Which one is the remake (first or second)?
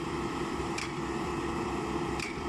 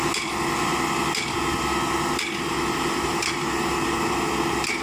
first